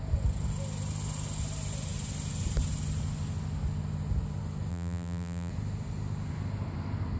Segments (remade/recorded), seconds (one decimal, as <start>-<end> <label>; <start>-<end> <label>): 0.0-4.7 recorded; 4.7-5.5 remade; 5.5-7.2 recorded